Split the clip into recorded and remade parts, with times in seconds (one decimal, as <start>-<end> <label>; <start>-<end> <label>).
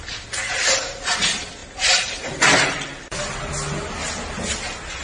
0.0-1.6 recorded; 1.6-3.5 remade; 3.5-5.0 recorded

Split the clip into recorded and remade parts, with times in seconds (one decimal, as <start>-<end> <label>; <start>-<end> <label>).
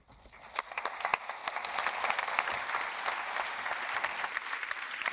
0.0-1.4 remade; 1.4-4.2 recorded; 4.2-5.1 remade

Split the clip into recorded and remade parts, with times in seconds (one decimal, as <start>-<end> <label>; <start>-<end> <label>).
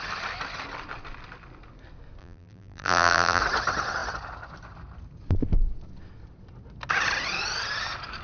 0.0-2.2 recorded; 2.2-3.4 remade; 3.4-8.2 recorded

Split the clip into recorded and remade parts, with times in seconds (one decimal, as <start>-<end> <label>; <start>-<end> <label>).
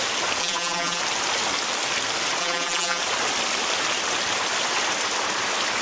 0.0-0.4 recorded; 0.4-1.0 remade; 1.0-2.4 recorded; 2.4-3.0 remade; 3.0-5.8 recorded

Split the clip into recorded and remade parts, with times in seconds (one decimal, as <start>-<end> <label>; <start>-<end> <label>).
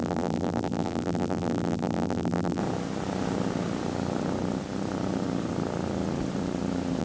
0.0-2.6 remade; 2.6-7.0 recorded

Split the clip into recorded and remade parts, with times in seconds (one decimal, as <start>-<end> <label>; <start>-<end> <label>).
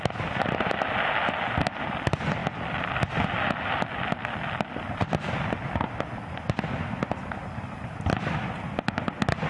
0.0-9.5 recorded